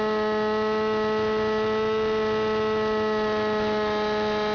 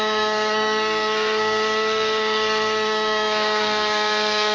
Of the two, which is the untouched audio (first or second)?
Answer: first